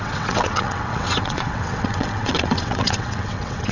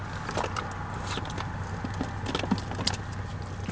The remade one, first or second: first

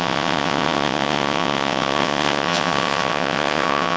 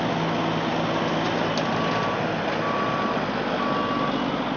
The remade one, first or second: first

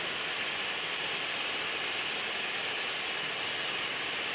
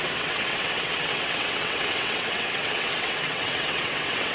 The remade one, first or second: second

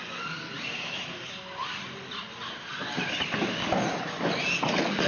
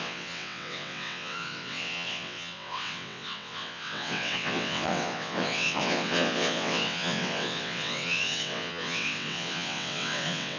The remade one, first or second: second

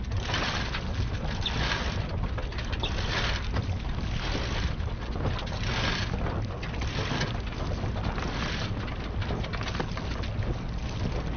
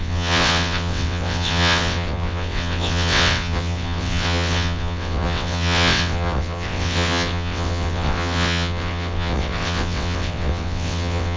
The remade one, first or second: second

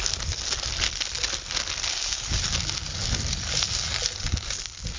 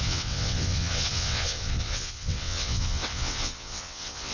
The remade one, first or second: second